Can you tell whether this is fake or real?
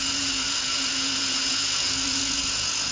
fake